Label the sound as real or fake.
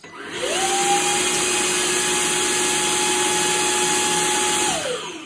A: real